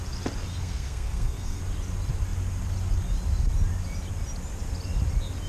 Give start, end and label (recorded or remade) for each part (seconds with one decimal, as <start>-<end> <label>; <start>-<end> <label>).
0.0-0.5 recorded; 0.5-1.6 remade; 1.6-5.5 recorded